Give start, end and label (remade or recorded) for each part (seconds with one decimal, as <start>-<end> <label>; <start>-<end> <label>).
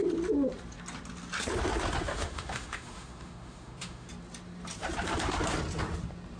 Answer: 0.0-2.1 recorded; 2.1-4.1 remade; 4.1-6.4 recorded